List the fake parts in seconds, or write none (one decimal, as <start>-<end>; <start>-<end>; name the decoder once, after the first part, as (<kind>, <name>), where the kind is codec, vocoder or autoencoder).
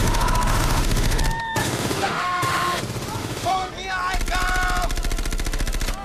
0.0-1.2 (autoencoder, DAC-VAE); 1.6-2.8; 3.2-3.7